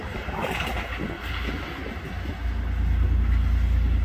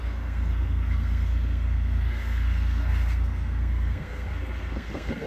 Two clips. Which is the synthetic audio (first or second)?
second